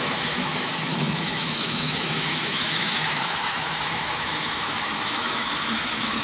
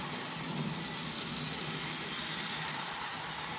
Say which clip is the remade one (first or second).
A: first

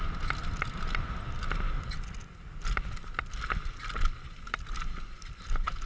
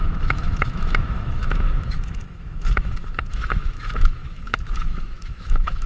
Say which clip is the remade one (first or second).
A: second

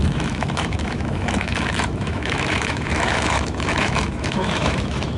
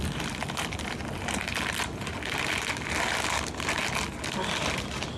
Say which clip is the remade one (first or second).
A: first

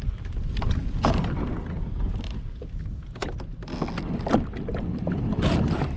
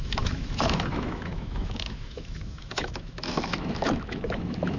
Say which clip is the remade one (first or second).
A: second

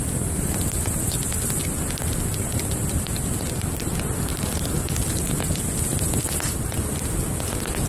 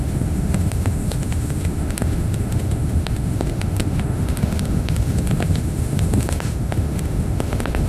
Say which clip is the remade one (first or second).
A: second